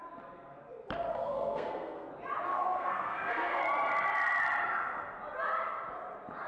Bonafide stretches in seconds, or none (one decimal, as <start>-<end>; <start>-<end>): 0.0-1.1; 2.1-2.5; 3.6-6.5